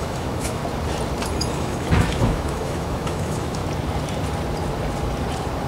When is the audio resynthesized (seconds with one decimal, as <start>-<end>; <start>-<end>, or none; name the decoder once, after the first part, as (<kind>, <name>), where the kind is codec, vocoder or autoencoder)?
0.0-0.6 (autoencoder, DAC-VAE); 1.3-3.6